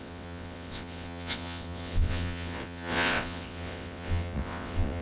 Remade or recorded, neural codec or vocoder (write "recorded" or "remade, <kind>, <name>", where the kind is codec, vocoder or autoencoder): remade, vocoder, WaveNeXt